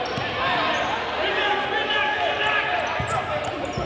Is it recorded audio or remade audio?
recorded